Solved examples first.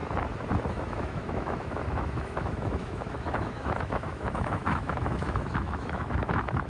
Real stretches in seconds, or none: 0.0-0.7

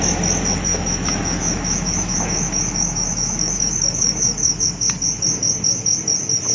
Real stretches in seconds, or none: 0.0-0.7; 4.6-6.5